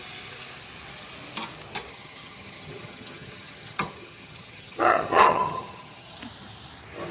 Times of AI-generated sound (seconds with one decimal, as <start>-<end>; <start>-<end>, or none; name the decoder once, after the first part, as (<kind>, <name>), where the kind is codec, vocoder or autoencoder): 1.9-6.2 (vocoder, HiFi-GAN)